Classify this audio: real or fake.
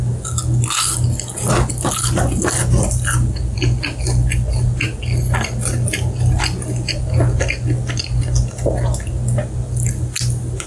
real